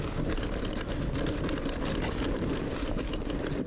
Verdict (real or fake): real